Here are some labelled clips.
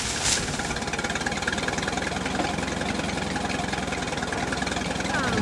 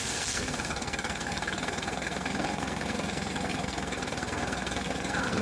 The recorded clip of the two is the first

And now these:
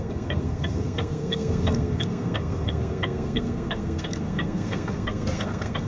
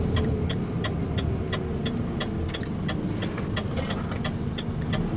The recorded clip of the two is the second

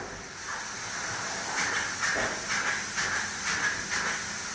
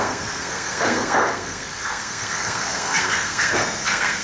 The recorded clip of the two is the first